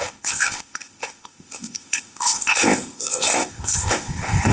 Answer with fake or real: fake